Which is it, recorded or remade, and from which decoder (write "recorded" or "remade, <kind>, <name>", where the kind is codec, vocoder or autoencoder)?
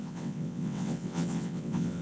remade, vocoder, WaveNeXt